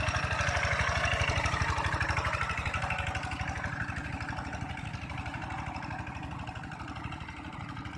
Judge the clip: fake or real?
real